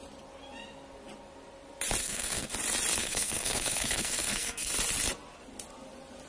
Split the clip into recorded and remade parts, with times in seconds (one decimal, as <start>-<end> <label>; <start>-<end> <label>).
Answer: 0.0-2.0 recorded; 2.0-2.5 remade; 2.5-3.0 recorded; 3.0-4.7 remade; 4.7-6.3 recorded